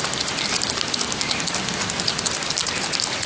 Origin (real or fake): real